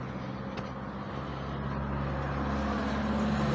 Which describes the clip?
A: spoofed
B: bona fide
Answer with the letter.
B